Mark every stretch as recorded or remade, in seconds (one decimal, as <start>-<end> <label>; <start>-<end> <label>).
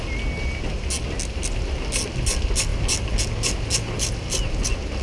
0.0-5.0 recorded